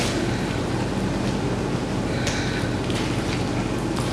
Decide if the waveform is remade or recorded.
recorded